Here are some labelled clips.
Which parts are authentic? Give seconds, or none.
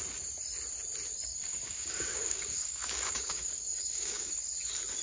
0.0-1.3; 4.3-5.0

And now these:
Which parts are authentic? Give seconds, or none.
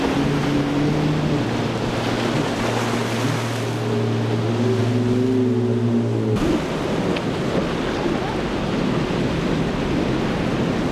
0.0-10.9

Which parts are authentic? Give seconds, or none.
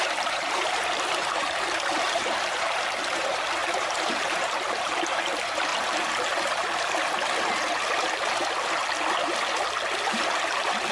5.7-10.9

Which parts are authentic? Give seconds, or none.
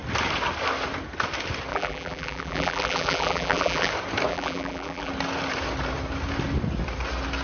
0.0-1.7; 3.9-4.3; 5.1-7.4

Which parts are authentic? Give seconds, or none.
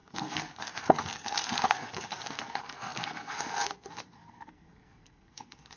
none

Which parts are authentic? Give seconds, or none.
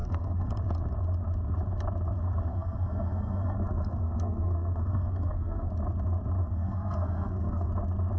0.5-2.5; 5.7-6.4; 7.7-8.2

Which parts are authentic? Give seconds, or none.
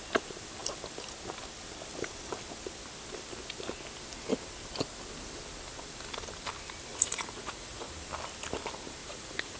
0.0-6.9; 7.9-9.0